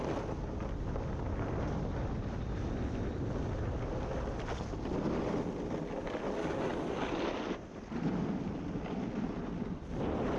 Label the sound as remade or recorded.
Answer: recorded